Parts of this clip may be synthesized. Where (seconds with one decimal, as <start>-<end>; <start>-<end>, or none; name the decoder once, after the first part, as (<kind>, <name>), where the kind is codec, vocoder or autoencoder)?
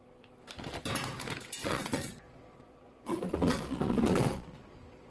1.6-5.1 (vocoder, Vocos)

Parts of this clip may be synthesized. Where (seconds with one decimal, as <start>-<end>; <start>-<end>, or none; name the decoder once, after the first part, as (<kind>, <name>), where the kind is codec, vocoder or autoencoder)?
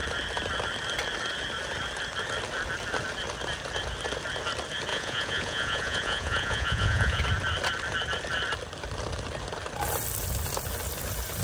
4.9-7.2 (vocoder, Vocos)